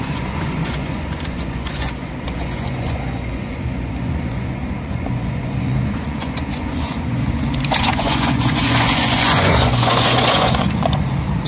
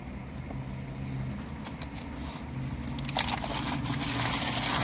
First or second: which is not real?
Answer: first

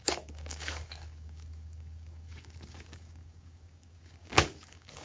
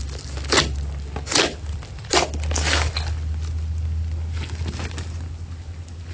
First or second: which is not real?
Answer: first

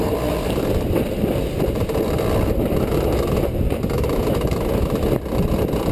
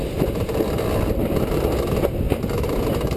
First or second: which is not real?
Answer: first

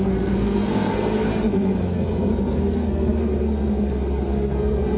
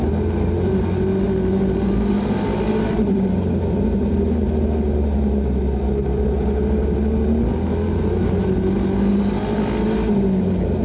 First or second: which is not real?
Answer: first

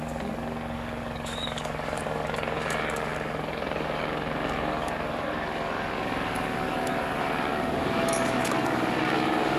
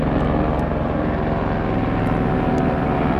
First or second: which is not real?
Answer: first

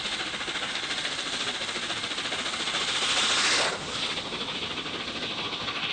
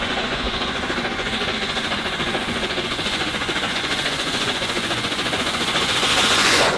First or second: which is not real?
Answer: second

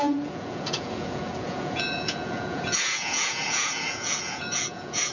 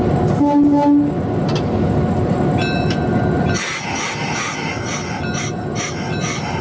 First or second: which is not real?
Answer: first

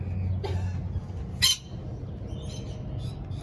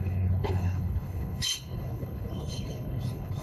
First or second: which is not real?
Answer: second